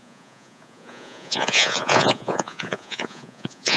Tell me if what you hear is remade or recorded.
remade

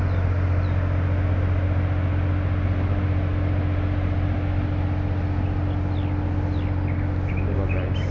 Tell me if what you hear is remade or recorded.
recorded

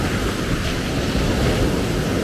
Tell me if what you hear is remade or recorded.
recorded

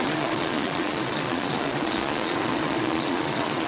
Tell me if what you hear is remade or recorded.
remade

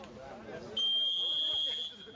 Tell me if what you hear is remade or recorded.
recorded